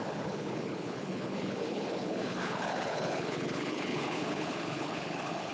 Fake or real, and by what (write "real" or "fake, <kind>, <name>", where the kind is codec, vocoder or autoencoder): fake, codec, HILCodec